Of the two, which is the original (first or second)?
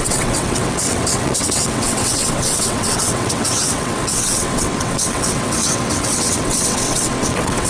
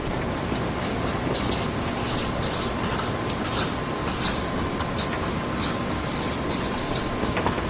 second